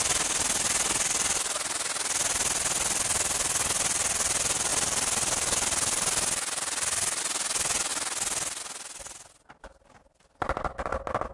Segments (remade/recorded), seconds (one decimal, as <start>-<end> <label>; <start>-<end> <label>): 0.0-11.3 recorded